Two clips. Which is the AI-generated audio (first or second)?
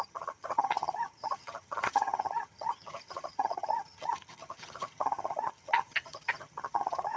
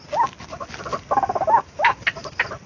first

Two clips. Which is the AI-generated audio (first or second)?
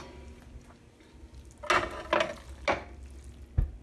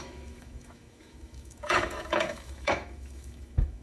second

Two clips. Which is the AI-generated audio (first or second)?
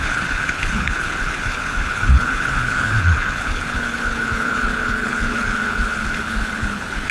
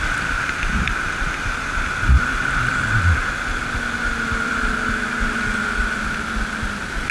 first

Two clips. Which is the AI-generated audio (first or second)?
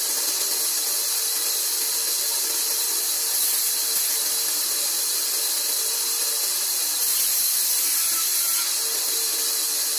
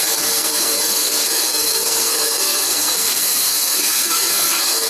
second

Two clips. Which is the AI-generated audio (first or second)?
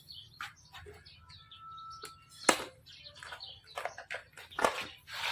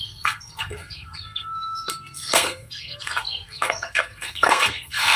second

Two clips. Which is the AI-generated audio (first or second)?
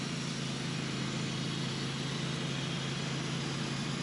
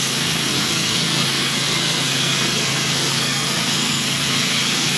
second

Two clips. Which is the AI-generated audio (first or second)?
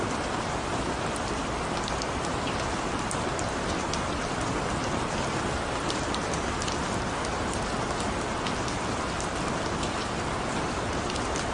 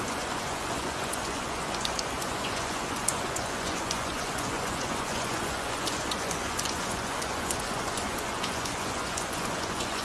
second